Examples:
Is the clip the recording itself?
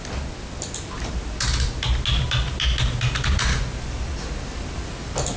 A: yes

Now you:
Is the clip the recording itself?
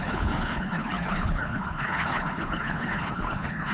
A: no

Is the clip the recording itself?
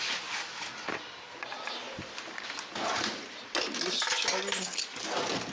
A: yes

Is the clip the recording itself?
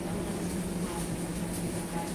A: yes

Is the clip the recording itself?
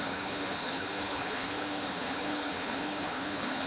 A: no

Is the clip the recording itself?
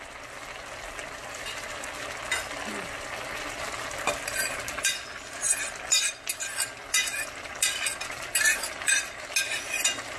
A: yes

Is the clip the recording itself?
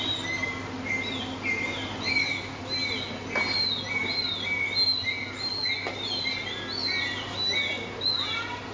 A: yes